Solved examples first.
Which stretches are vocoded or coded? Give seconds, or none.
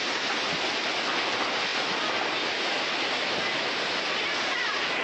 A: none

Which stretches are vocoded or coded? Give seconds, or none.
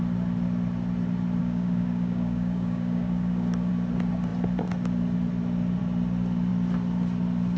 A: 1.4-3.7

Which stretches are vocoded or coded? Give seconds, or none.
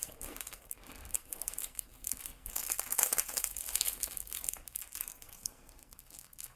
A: 0.0-6.6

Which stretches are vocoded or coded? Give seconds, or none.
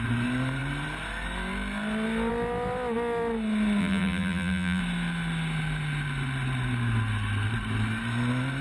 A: 3.8-4.8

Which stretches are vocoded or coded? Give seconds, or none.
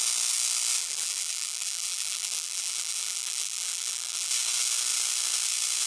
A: 0.8-4.3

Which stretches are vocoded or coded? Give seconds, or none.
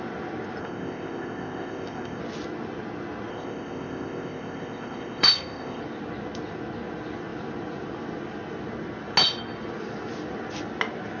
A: 0.6-2.2; 3.3-5.8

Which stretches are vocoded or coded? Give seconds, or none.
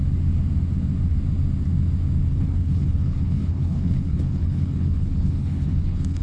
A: 2.3-6.2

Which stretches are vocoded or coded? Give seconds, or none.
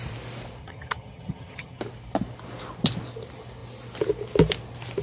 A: 0.6-1.8